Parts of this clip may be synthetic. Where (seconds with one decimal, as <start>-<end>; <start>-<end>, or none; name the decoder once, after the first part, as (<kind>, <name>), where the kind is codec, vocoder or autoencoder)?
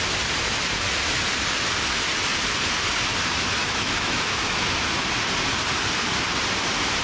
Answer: 3.6-4.7 (autoencoder, DAC-VAE)